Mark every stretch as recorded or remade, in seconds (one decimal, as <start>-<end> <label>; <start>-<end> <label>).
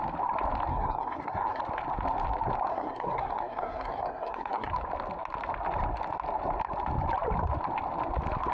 0.0-0.7 recorded; 0.7-1.6 remade; 1.6-2.7 recorded; 2.7-4.7 remade; 4.7-8.5 recorded